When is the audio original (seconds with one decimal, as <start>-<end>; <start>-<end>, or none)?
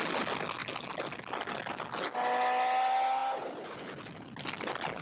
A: 0.0-5.0